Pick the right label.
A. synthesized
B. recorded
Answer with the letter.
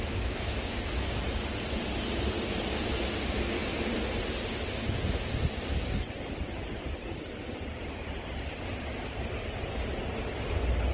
B